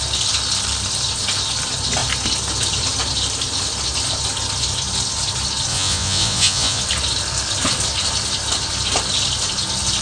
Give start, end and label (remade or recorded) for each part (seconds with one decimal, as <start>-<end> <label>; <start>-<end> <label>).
0.0-5.7 recorded; 5.7-6.8 remade; 6.8-10.0 recorded